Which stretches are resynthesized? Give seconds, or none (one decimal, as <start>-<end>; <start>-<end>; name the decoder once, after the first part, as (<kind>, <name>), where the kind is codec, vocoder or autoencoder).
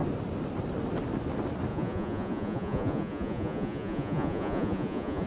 1.7-5.3 (vocoder, Vocos)